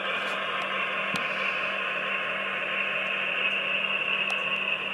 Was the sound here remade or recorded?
recorded